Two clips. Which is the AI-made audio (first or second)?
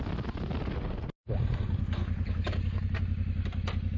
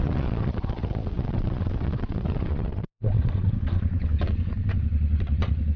second